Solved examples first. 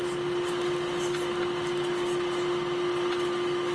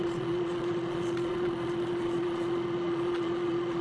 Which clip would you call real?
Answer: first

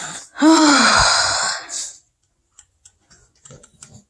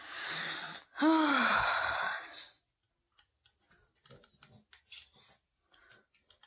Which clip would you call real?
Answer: second